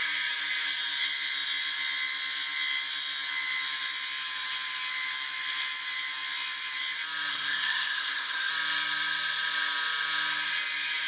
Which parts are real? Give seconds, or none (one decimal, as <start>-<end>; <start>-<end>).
0.0-7.3; 8.5-11.1